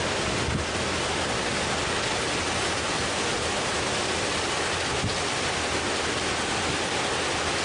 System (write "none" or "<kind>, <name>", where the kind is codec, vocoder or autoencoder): none